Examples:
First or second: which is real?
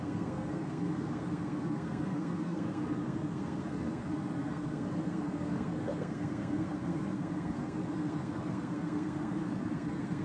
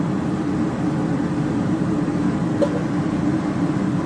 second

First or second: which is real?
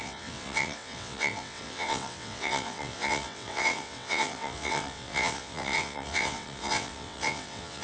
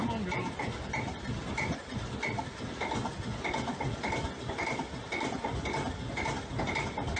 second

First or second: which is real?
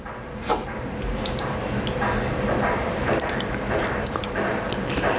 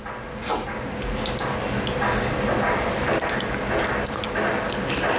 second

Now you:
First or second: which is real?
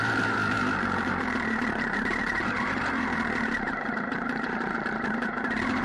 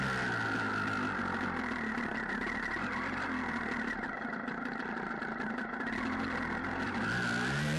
second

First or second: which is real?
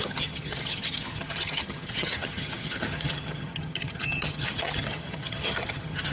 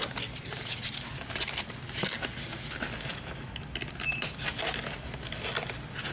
second